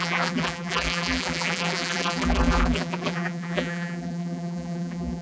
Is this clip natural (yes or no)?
no